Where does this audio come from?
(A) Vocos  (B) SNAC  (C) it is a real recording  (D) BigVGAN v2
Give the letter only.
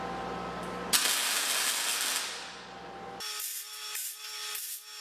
C